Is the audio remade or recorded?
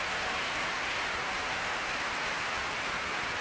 recorded